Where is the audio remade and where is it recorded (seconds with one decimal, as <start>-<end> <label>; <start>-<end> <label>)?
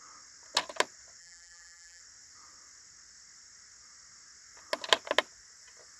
0.0-1.2 recorded; 1.2-2.0 remade; 2.0-6.0 recorded